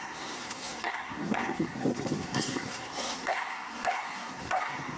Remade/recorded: remade